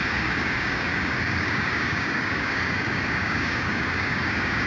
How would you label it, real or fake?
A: fake